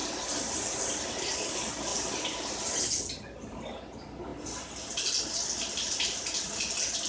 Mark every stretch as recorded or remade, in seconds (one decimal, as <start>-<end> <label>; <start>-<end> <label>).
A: 0.0-1.1 remade; 1.1-7.1 recorded